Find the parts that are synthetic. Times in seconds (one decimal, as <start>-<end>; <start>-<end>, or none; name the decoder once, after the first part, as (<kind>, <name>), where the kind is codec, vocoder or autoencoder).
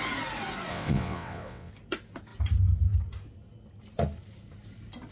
0.7-1.7 (vocoder, WaveNeXt)